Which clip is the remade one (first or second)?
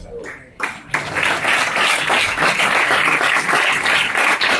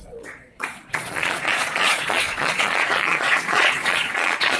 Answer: second